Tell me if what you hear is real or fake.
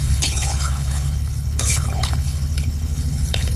fake